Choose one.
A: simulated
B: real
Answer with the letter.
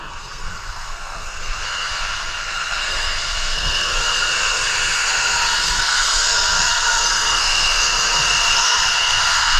A